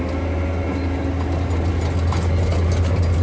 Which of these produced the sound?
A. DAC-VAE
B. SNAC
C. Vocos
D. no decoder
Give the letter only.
D